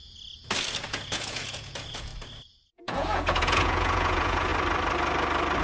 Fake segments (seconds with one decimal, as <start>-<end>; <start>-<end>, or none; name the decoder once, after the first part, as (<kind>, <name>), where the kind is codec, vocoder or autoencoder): 0.9-2.1 (vocoder, Vocos); 2.7-4.5